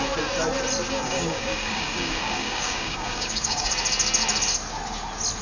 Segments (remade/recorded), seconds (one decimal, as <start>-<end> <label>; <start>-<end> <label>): 0.0-1.0 recorded; 1.0-3.7 remade; 3.7-5.4 recorded